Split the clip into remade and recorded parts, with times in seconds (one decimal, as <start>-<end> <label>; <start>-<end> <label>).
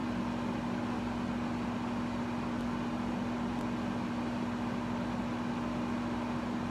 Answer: 0.0-6.7 recorded